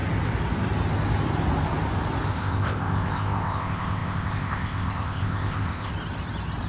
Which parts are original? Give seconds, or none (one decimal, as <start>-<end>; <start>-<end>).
0.0-2.3; 5.9-6.7